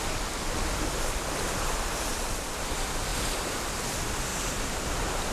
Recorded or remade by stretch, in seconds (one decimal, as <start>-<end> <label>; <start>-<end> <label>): 0.0-2.1 recorded; 2.1-2.6 remade; 2.6-4.3 recorded; 4.3-5.3 remade